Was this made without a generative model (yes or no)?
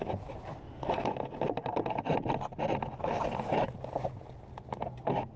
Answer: yes